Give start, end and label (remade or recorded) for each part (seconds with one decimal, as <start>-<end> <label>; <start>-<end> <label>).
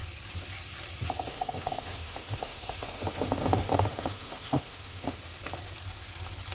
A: 0.0-1.3 recorded; 1.3-5.2 remade; 5.2-6.5 recorded